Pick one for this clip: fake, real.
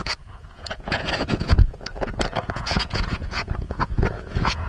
fake